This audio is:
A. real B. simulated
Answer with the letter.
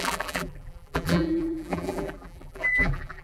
B